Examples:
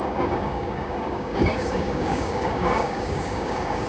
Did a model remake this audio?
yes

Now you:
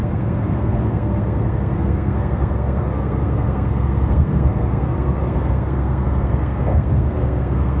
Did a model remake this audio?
yes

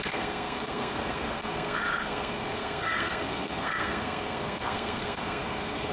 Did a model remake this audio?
yes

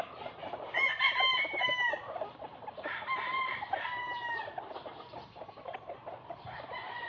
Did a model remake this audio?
yes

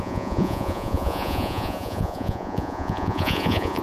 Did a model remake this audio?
yes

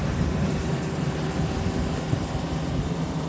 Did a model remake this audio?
no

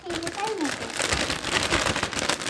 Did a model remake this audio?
no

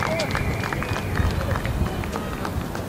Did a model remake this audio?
no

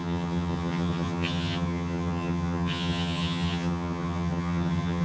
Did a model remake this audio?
yes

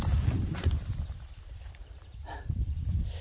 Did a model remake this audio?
yes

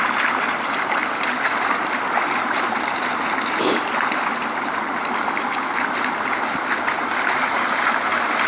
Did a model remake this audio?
no